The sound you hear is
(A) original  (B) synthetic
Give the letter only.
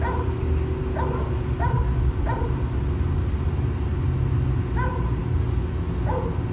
A